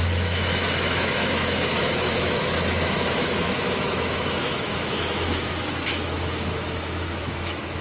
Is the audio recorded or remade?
remade